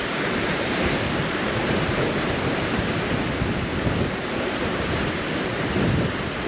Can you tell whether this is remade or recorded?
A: remade